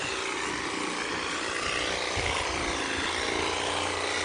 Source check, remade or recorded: recorded